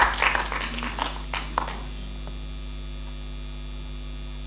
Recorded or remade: recorded